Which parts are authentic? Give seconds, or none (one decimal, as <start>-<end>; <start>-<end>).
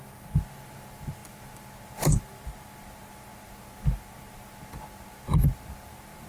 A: 0.0-6.3